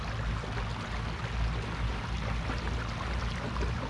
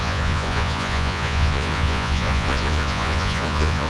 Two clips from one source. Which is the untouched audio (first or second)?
first